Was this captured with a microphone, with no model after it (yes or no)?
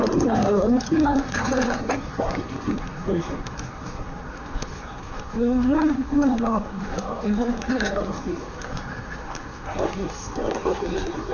no